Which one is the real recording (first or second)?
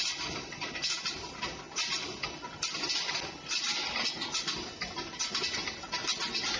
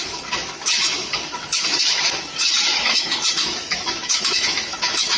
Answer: first